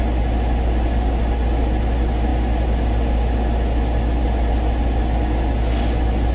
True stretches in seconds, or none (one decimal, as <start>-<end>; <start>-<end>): 0.0-6.3